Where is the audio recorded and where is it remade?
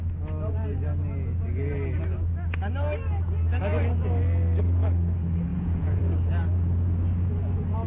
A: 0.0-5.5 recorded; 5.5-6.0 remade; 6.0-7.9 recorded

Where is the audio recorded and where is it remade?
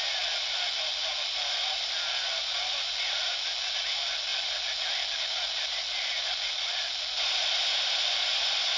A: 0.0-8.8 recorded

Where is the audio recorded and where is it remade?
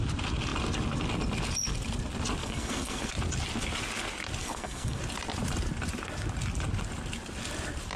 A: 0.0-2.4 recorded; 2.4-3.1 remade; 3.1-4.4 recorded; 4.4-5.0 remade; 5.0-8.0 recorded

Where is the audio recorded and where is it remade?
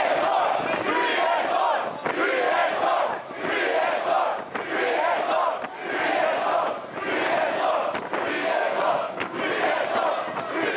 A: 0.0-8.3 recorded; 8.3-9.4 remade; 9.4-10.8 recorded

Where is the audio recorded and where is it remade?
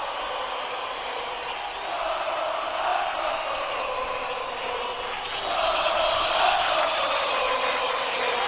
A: 0.0-8.5 recorded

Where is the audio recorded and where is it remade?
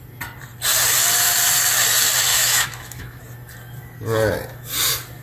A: 0.0-2.3 recorded; 2.3-3.2 remade; 3.2-5.2 recorded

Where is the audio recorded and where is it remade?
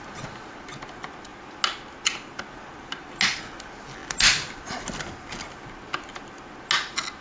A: 0.0-7.2 recorded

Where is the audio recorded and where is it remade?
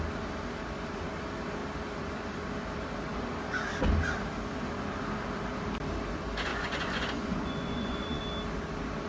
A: 0.0-6.5 recorded; 6.5-8.2 remade; 8.2-9.1 recorded